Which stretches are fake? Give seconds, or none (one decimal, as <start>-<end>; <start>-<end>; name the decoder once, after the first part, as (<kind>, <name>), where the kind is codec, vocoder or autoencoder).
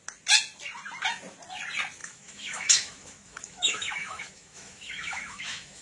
2.0-5.8 (autoencoder, DAC-VAE)